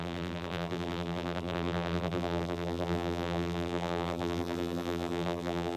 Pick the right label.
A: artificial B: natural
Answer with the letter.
A